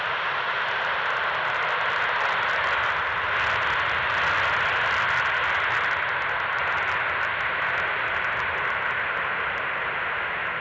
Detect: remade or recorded recorded